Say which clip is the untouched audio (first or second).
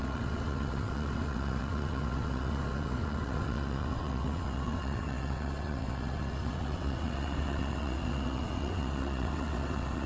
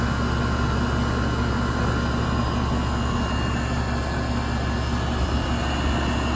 second